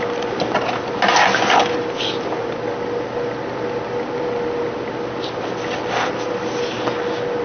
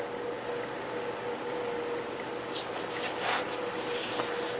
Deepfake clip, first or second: second